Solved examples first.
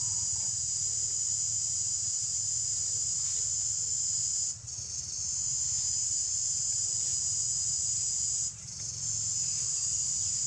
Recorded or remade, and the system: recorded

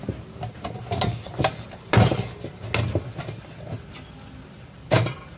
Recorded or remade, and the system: recorded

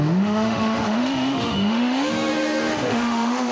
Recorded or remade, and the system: remade, autoencoder, DAC-VAE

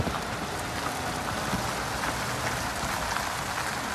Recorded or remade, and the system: recorded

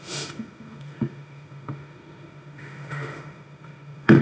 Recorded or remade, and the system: remade, autoencoder, DAC-VAE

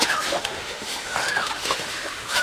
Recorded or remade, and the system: remade, autoencoder, DAC-VAE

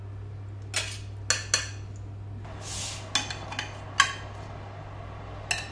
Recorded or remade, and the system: recorded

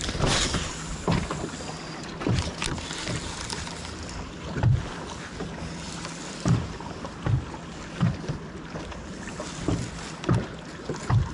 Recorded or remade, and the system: recorded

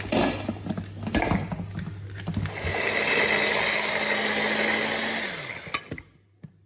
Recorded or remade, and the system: recorded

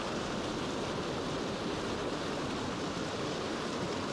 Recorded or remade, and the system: recorded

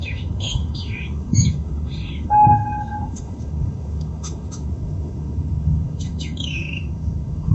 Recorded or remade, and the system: remade, autoencoder, DAC-VAE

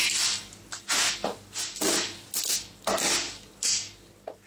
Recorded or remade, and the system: recorded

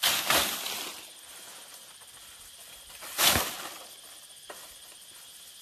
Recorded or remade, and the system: recorded